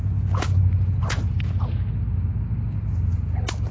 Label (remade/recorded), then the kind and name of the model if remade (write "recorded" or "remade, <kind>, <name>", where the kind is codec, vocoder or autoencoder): recorded